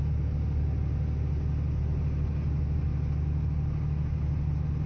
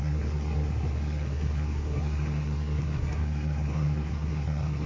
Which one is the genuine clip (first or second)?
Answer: first